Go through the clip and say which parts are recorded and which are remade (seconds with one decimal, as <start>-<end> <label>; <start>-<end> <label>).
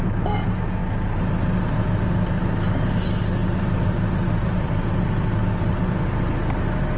0.0-3.4 recorded; 3.4-6.2 remade; 6.2-7.0 recorded